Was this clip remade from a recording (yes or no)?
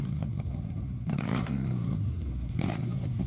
yes